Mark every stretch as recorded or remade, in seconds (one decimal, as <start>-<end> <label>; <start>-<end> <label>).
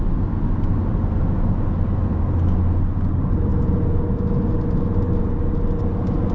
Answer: 0.0-6.3 recorded